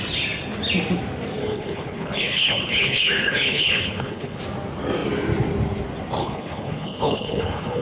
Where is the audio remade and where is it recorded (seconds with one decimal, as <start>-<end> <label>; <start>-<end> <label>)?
0.0-1.4 recorded; 1.4-4.4 remade; 4.4-6.2 recorded; 6.2-7.8 remade